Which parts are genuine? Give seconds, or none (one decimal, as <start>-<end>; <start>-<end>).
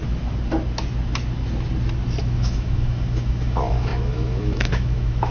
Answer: 0.0-2.2